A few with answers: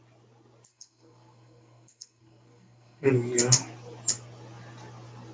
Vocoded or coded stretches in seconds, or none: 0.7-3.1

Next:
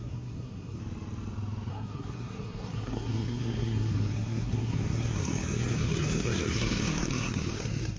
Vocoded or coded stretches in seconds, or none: 0.0-0.8; 1.7-8.0

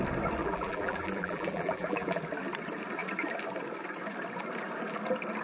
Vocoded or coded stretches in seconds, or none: 0.4-2.2

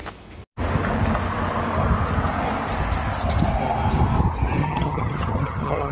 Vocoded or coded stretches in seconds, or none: 4.6-5.9

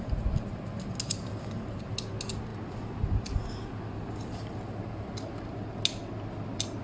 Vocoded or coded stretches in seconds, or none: none

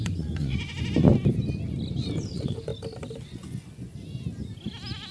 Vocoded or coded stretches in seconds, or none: 0.0-1.1; 2.2-2.7; 3.2-3.9